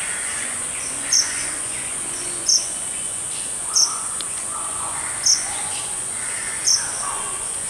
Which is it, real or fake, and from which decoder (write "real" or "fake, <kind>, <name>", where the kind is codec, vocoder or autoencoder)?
fake, vocoder, Vocos